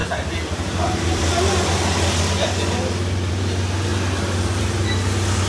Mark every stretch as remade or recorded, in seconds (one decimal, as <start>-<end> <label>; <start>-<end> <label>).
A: 0.0-5.5 recorded